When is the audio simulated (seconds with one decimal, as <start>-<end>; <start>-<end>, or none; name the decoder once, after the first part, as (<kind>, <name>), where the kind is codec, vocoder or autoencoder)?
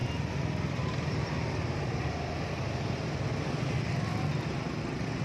none